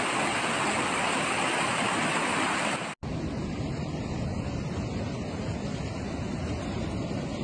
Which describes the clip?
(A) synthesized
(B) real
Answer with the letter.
B